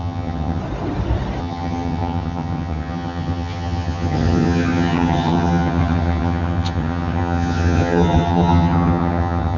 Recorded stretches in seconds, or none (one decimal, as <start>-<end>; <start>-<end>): 0.6-1.4